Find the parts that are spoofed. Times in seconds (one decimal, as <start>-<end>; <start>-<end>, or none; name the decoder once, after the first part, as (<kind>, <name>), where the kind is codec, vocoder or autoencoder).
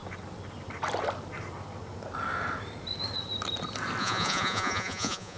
4.0-5.4 (vocoder, Vocos)